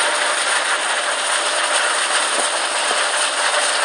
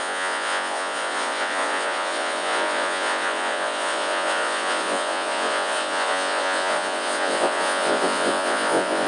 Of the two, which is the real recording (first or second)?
first